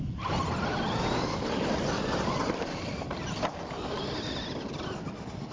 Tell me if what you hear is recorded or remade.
recorded